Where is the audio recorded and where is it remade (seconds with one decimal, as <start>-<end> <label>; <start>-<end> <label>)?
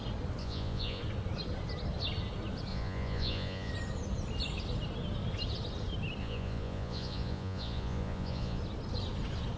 0.0-0.4 recorded; 0.4-1.0 remade; 1.0-2.7 recorded; 2.7-3.7 remade; 3.7-6.2 recorded; 6.2-8.6 remade; 8.6-9.6 recorded